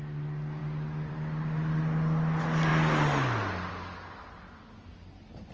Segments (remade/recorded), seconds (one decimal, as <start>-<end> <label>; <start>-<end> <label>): 0.0-5.5 recorded